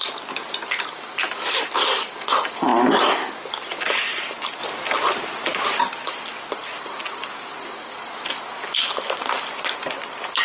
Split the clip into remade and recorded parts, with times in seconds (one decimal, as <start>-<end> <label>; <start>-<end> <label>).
0.0-10.4 recorded